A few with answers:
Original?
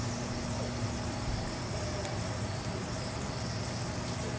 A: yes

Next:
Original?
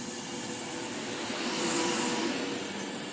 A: yes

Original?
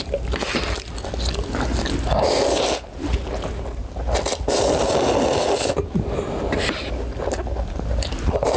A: yes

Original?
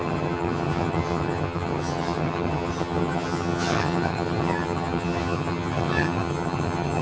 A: no